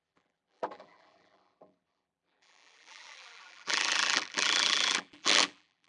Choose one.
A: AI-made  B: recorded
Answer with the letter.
A